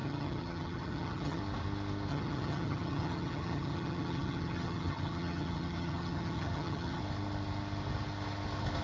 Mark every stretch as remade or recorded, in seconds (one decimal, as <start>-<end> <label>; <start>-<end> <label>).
0.0-1.4 remade; 1.4-2.1 recorded; 2.1-7.0 remade; 7.0-8.8 recorded

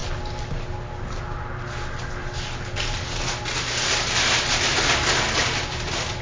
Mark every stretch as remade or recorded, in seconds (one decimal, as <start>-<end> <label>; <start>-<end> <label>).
0.0-6.2 recorded